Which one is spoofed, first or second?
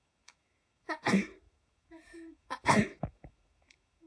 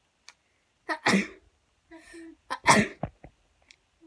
first